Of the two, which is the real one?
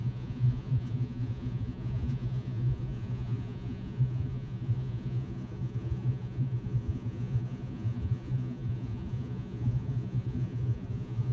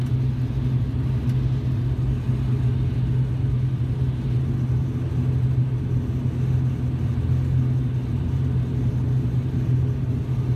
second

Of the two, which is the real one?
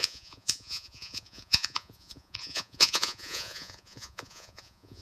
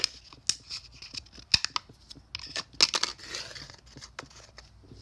second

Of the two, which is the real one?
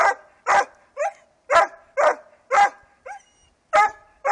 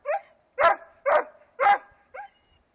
first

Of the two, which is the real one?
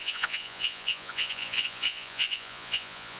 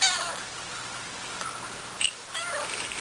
second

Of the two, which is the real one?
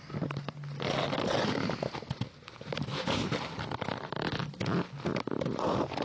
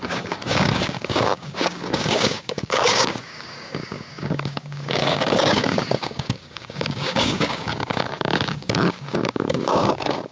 first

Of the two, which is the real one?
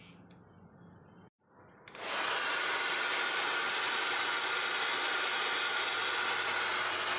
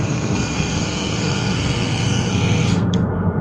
first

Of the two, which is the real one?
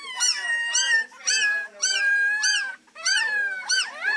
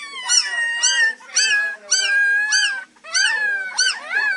second